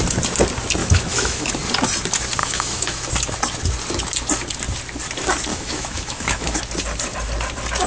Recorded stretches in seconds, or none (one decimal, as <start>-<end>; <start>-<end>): 0.0-0.8; 1.5-2.4; 3.1-5.5; 6.6-7.9

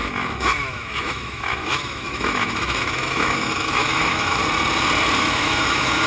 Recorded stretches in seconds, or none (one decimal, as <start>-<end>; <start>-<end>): 4.4-5.2